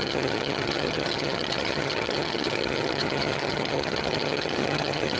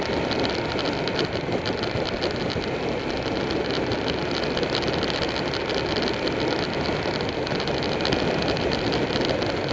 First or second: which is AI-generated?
first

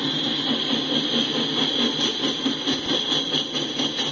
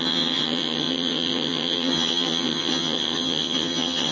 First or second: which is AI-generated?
second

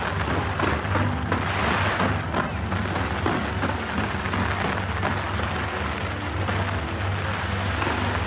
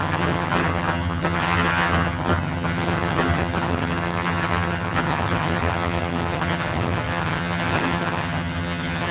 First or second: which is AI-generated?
second